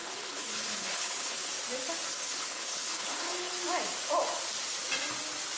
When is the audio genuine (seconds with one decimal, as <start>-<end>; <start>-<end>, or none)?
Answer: 1.5-2.1; 3.5-5.6